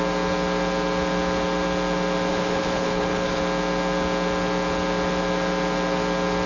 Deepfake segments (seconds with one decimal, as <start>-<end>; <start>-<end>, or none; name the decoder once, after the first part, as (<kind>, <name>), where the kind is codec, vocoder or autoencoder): 2.3-3.4 (codec, HILCodec)